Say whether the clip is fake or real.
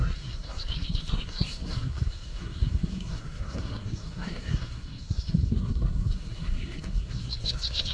fake